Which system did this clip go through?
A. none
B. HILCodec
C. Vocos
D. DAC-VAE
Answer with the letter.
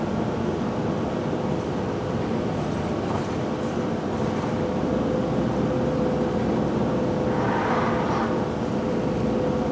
A